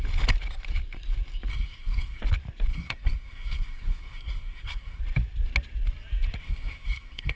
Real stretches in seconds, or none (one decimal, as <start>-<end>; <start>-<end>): 0.0-1.5; 2.2-2.7; 5.0-6.4